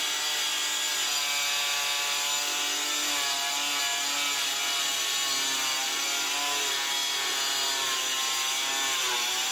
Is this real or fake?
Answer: real